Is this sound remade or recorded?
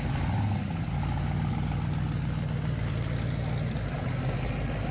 recorded